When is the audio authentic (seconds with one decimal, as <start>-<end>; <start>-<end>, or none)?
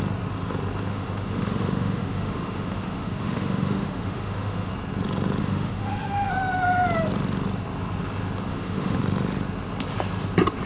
0.0-0.9; 4.7-5.4; 6.3-8.5; 9.0-10.7